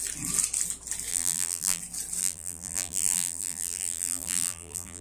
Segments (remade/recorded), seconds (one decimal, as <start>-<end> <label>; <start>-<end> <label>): 0.0-1.1 recorded; 1.1-1.8 remade; 1.8-2.2 recorded; 2.2-5.0 remade